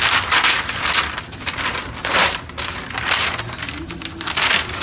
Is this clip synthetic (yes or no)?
no